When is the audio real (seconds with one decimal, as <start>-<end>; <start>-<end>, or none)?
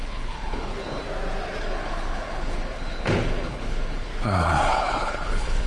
1.0-1.6; 4.1-4.7